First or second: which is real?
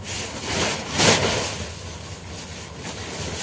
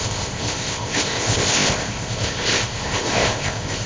first